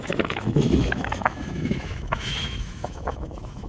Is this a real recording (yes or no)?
no